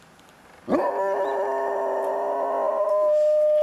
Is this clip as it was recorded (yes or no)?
yes